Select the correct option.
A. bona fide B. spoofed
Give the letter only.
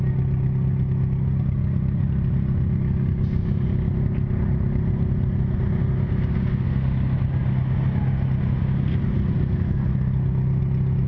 A